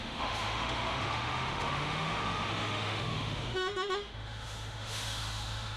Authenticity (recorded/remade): remade